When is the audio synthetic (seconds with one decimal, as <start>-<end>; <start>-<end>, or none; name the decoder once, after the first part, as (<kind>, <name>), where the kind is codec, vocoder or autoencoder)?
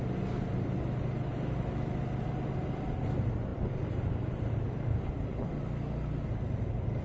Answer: 3.5-5.7 (vocoder, BigVGAN v2)